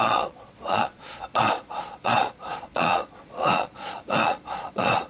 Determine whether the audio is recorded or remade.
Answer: remade